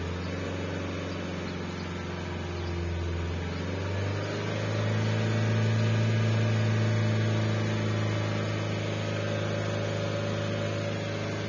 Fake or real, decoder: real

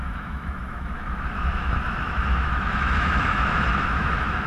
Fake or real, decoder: fake, autoencoder, DAC-VAE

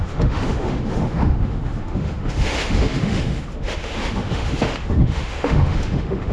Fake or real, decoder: fake, autoencoder, DAC-VAE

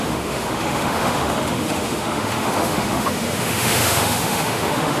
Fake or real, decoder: fake, autoencoder, DAC-VAE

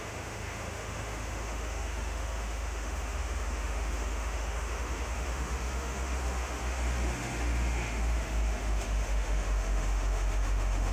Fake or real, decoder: fake, autoencoder, DAC-VAE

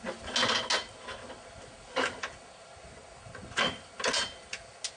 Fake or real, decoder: real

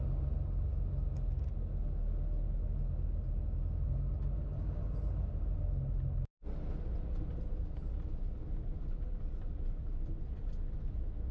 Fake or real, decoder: real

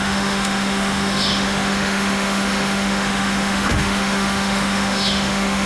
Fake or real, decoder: fake, autoencoder, DAC-VAE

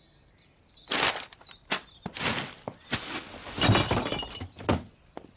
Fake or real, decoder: real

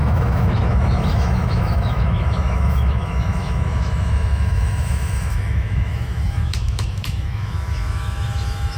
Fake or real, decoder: fake, autoencoder, DAC-VAE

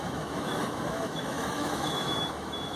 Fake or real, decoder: fake, autoencoder, DAC-VAE